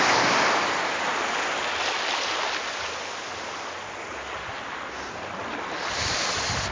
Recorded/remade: recorded